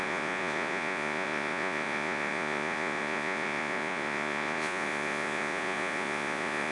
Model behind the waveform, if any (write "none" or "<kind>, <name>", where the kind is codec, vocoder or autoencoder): vocoder, Vocos